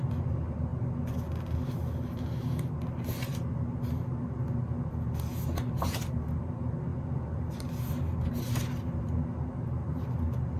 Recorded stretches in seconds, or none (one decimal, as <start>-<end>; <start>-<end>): 0.0-10.6

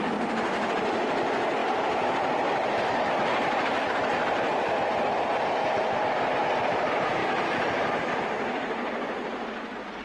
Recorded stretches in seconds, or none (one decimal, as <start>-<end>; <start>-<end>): 0.0-10.0